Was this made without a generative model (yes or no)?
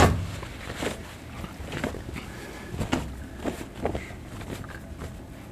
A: yes